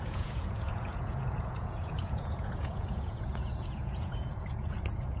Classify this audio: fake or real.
fake